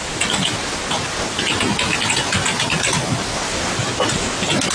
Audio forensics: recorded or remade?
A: recorded